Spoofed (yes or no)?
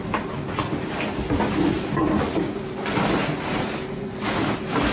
no